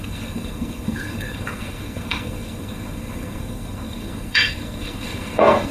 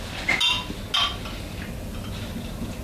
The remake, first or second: first